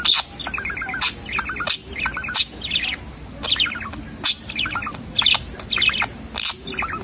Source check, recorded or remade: recorded